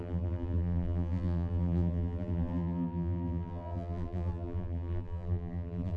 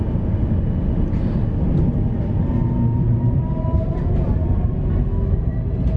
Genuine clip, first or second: second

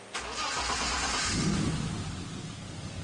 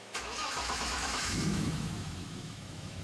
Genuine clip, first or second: first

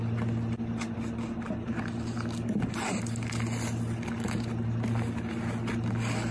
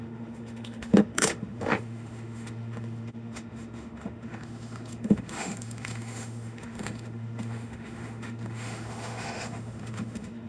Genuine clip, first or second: first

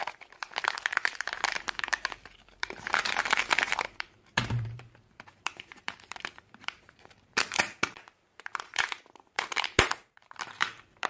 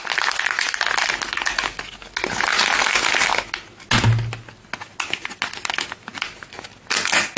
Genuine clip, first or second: second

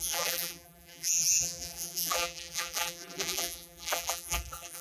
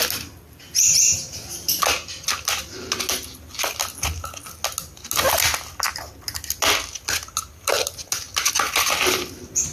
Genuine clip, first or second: second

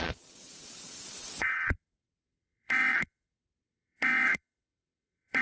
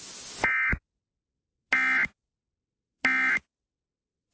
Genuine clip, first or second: second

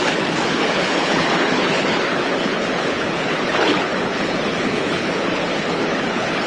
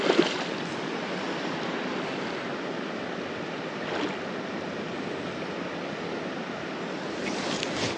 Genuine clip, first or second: second